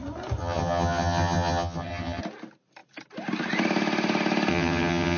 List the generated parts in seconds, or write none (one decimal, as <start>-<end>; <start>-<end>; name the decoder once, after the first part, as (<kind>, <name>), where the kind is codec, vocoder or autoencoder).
0.4-2.2 (vocoder, HiFi-GAN); 4.5-5.2